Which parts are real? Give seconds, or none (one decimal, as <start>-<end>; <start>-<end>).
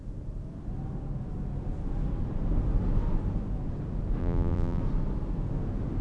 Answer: 0.0-4.2; 4.8-6.0